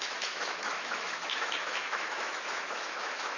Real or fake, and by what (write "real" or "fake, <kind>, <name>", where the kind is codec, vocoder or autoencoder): fake, autoencoder, DAC-VAE